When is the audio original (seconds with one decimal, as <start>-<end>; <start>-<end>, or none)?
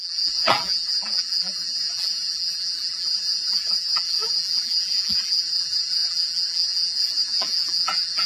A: none